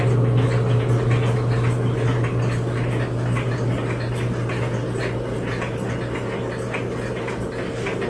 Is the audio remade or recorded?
recorded